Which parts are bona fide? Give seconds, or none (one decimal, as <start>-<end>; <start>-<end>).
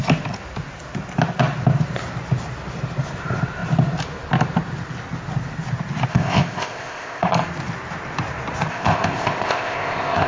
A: 0.0-6.1; 7.3-8.7